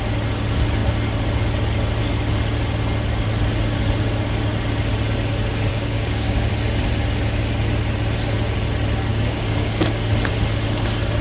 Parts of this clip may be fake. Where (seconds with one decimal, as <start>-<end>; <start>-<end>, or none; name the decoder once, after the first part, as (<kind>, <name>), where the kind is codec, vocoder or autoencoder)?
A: 5.7-6.5 (codec, DAC); 9.1-10.1